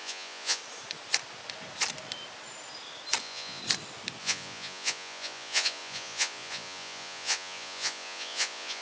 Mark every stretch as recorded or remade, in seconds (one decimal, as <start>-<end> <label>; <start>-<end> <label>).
0.0-0.6 remade; 0.6-3.2 recorded; 3.2-3.6 remade; 3.6-4.2 recorded; 4.2-8.8 remade